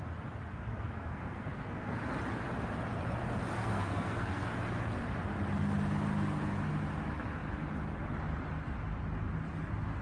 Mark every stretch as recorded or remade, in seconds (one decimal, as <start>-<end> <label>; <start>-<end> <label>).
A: 0.0-0.5 recorded; 0.5-2.0 remade; 2.0-3.6 recorded; 3.6-4.5 remade; 4.5-10.0 recorded